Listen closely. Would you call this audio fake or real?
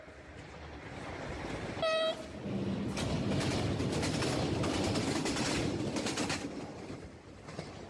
real